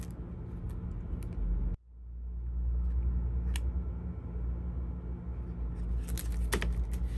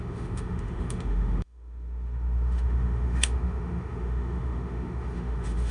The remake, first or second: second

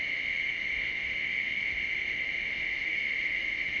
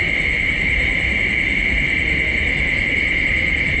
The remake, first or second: first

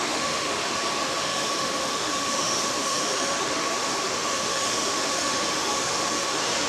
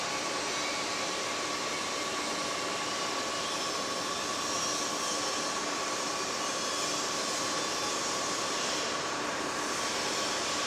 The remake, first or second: first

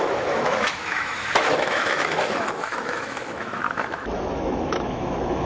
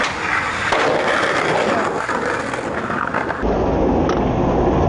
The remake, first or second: first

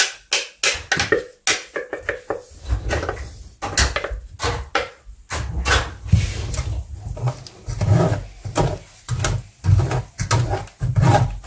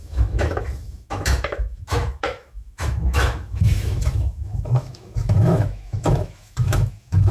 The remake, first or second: second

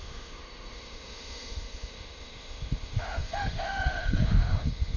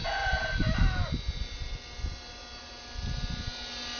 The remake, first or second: first